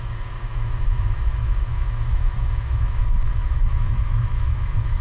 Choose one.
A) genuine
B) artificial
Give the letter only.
B